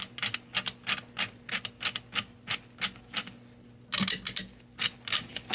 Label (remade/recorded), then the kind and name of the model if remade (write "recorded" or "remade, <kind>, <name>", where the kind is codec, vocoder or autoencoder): recorded